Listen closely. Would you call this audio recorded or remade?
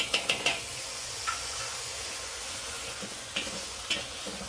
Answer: remade